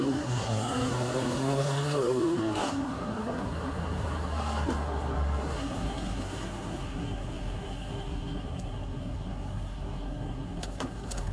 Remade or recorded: remade